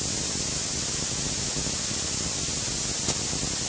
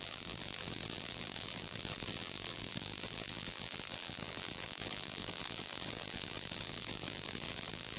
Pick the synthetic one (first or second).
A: second